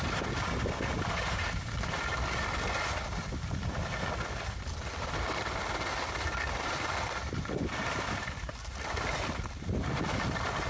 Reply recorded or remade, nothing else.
recorded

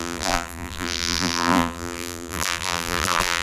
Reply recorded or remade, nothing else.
remade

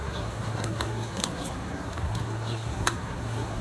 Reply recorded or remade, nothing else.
remade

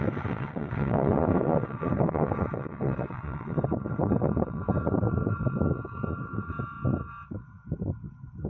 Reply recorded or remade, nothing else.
remade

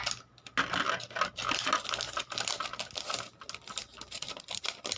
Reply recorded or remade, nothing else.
recorded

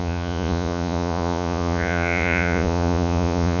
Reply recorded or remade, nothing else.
remade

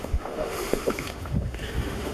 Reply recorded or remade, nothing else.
remade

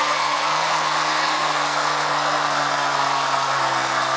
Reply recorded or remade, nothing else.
remade